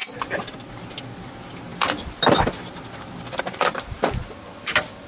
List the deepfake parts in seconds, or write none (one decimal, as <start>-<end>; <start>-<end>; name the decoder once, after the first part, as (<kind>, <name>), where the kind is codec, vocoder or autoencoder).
none